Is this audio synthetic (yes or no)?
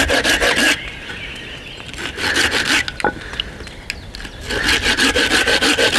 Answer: no